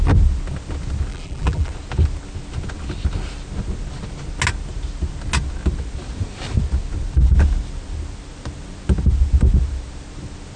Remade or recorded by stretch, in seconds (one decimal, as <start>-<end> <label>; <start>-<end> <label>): 0.0-1.1 recorded; 1.1-1.7 remade; 1.7-10.6 recorded